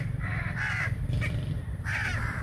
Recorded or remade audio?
remade